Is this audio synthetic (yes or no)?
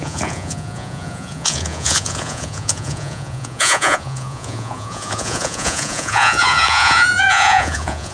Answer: yes